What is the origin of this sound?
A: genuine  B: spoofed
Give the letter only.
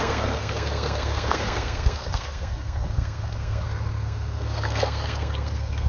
B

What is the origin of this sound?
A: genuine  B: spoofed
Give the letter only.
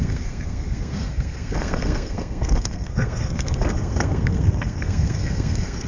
B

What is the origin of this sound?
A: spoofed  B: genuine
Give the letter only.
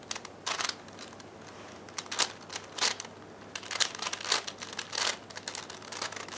B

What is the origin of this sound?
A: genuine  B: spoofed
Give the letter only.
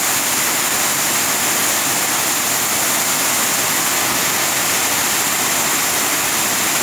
A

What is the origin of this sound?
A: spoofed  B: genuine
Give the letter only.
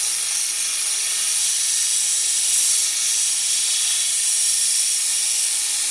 B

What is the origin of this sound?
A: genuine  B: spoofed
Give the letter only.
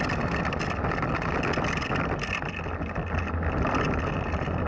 A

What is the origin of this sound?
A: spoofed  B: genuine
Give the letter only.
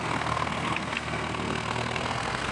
A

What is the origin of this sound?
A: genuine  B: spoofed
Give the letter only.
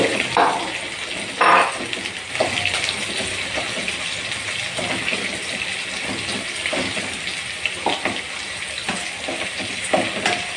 A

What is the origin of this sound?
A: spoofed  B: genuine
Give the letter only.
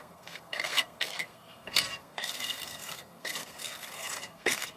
A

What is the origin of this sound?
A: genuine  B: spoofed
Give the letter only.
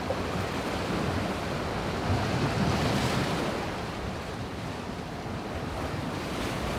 A